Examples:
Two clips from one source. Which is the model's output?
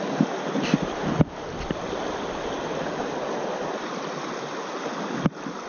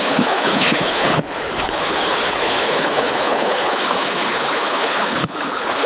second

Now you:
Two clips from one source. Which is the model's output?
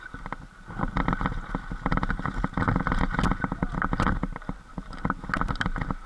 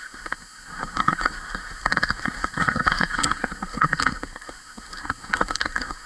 second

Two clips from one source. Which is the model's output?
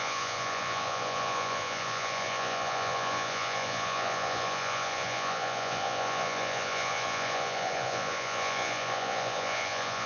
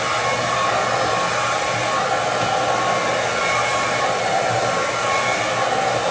first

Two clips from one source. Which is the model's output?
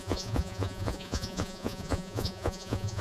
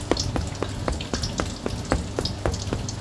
first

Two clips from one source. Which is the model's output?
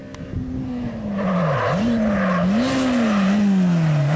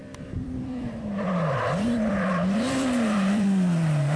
second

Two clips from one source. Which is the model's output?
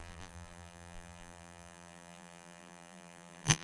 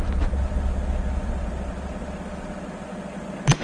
first